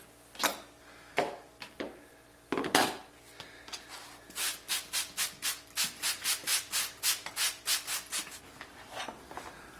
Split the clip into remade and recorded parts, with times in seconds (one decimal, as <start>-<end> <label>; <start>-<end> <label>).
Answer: 0.0-9.8 recorded